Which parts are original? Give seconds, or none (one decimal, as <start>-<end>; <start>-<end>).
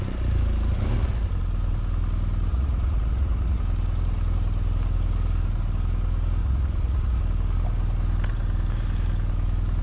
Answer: 0.0-2.5; 3.6-6.4; 7.2-9.8